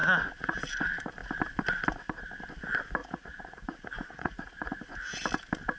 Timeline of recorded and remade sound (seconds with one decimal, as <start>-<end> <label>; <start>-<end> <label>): 0.0-0.6 remade; 0.6-3.0 recorded; 3.0-4.8 remade; 4.8-5.8 recorded